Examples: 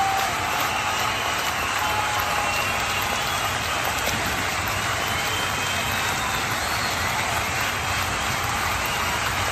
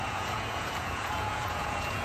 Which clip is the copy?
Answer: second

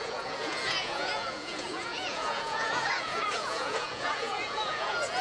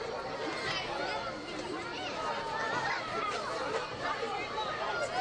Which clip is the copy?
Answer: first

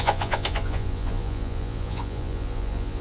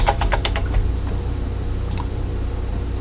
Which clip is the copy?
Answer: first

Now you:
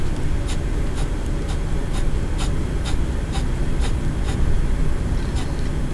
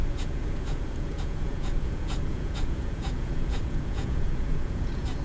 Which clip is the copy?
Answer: second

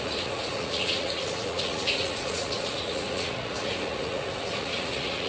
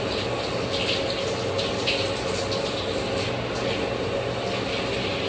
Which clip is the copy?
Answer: first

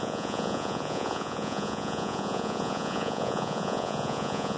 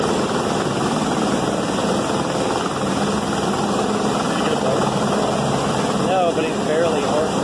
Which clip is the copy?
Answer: first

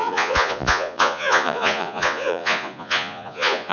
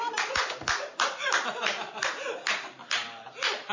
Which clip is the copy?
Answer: first